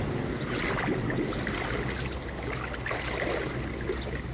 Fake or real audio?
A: real